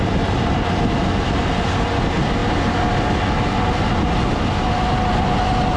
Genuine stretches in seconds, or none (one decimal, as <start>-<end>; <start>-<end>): 0.0-5.8